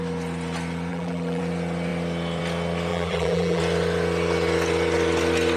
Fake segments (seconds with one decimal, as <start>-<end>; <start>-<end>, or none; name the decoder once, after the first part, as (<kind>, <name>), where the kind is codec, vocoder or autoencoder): 0.9-1.4 (vocoder, BigVGAN v2); 2.9-3.6